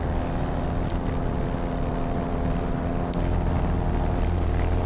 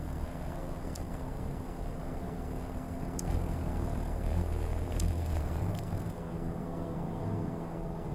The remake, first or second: second